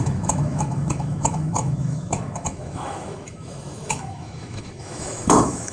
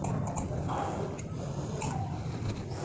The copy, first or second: first